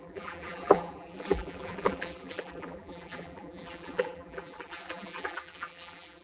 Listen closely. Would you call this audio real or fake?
fake